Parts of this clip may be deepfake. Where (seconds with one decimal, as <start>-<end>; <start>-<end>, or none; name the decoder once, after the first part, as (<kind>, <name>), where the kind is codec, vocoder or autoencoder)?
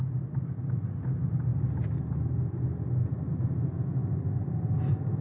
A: none